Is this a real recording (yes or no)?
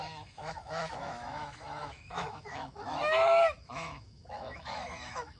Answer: no